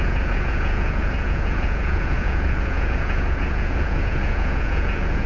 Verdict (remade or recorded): remade